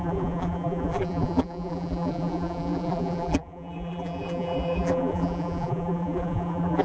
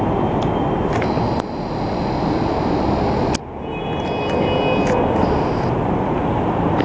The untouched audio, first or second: second